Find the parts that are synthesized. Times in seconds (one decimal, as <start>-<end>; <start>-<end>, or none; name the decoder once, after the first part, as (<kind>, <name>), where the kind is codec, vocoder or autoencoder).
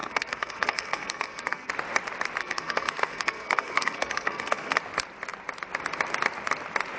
0.0-1.7 (codec, SNAC); 2.4-4.8